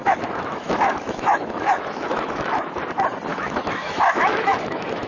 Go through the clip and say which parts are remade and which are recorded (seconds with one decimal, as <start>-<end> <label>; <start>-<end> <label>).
0.0-2.8 remade; 2.8-3.3 recorded; 3.3-5.1 remade